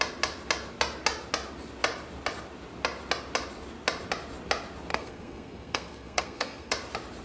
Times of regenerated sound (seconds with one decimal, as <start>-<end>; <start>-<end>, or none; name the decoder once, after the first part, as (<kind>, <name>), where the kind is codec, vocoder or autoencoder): 4.9-6.7 (codec, SNAC)